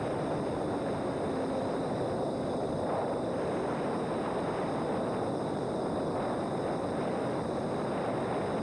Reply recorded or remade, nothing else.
recorded